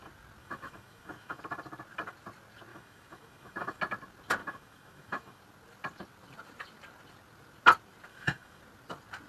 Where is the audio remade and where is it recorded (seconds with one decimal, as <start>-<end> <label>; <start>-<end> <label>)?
0.0-0.4 recorded; 0.4-1.4 remade; 1.4-2.7 recorded; 2.7-3.8 remade; 3.8-4.4 recorded; 4.4-5.4 remade; 5.4-8.1 recorded; 8.1-8.6 remade; 8.6-9.3 recorded